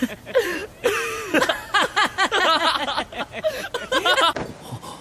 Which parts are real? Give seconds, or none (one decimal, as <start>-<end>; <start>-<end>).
3.8-5.0